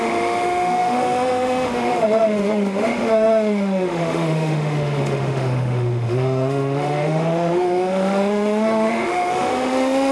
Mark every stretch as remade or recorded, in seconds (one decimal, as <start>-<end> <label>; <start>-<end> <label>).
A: 0.0-10.1 remade